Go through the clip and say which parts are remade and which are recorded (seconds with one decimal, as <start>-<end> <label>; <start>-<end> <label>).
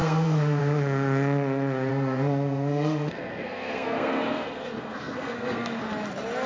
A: 0.0-0.6 remade; 0.6-1.9 recorded; 1.9-5.8 remade; 5.8-6.5 recorded